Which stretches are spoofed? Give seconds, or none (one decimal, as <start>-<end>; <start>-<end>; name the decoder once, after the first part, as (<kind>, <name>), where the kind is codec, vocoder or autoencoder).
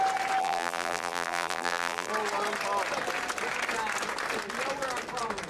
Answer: 0.4-2.1 (vocoder, BigVGAN v2)